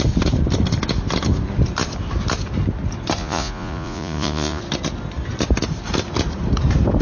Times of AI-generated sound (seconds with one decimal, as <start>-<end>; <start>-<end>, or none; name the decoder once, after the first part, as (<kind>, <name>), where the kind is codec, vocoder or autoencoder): 3.2-4.6 (vocoder, Vocos)